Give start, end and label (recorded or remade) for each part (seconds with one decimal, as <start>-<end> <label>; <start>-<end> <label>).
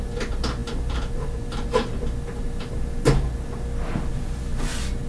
0.0-5.1 recorded